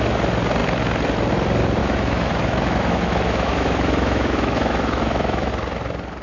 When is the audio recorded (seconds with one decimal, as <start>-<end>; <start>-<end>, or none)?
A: 0.0-1.8; 5.5-6.2